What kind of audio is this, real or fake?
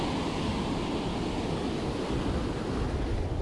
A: real